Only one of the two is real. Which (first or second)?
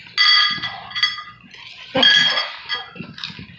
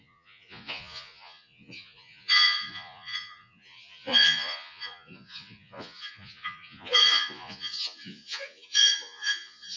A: first